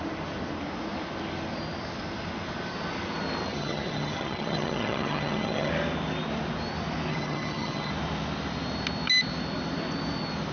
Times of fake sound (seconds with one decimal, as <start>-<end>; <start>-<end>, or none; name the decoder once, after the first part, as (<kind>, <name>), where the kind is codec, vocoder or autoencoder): 3.5-5.7 (vocoder, HiFi-GAN); 7.1-7.9